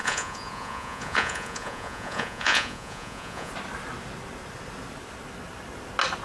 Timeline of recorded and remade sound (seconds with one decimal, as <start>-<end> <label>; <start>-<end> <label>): 0.0-3.5 remade; 3.5-6.2 recorded